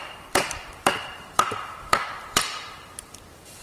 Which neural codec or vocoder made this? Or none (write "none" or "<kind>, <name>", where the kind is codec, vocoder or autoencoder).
vocoder, BigVGAN v2